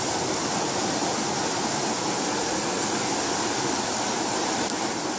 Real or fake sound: real